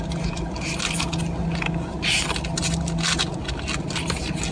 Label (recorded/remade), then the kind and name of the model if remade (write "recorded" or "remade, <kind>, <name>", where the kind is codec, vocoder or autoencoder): recorded